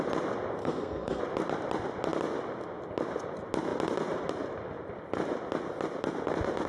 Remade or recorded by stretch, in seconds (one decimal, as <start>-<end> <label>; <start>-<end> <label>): 0.0-0.6 recorded; 0.6-1.2 remade; 1.2-6.7 recorded